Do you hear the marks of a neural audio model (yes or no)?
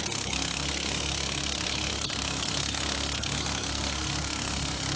yes